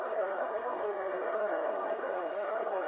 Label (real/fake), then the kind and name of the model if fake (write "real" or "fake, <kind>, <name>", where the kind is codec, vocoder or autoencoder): fake, codec, SNAC